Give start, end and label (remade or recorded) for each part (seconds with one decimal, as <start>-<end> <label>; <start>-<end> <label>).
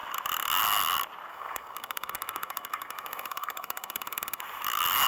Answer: 0.0-1.3 recorded; 1.3-4.4 remade; 4.4-5.1 recorded